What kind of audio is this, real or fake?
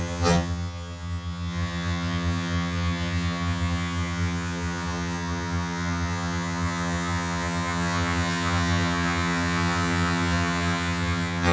fake